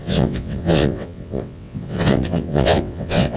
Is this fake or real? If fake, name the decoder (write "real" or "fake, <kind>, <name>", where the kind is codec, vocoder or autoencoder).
fake, vocoder, WaveNeXt